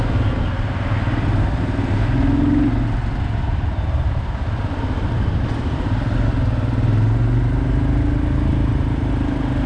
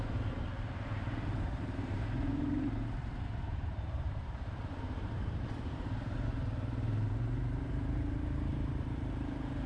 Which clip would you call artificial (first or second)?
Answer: second